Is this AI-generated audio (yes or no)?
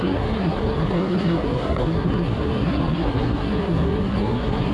yes